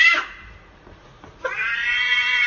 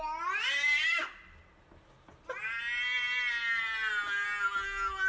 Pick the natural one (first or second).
second